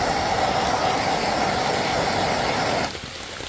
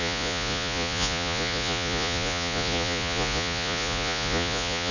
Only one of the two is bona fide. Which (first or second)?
first